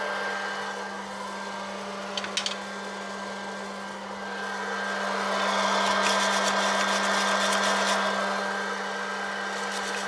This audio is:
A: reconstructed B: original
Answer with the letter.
B